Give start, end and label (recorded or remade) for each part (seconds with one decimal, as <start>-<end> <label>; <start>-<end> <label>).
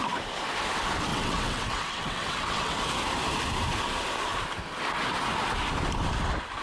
0.0-1.1 recorded; 1.1-2.8 remade; 2.8-6.6 recorded